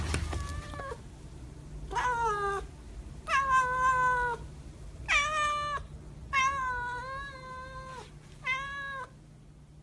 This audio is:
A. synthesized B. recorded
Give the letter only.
B